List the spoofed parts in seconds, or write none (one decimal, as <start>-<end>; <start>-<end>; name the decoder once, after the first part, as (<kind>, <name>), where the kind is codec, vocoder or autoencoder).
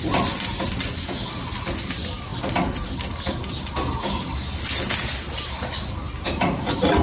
none